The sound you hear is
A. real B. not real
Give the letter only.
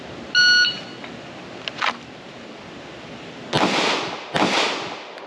A